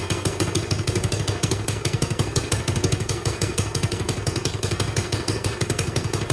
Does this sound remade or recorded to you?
remade